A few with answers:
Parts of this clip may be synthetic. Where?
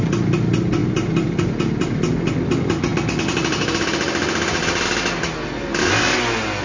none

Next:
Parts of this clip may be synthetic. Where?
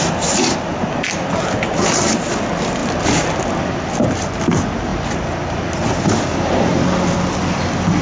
2.8-3.5 (vocoder, BigVGAN v2)